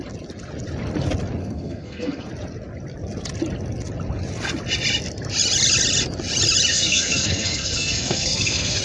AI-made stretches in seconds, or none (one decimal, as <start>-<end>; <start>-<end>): 1.4-2.3; 6.7-8.8